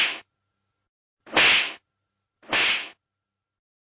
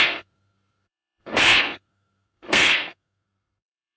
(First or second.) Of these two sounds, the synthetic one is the second